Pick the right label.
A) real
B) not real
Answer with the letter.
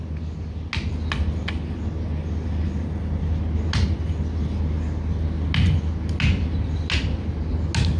A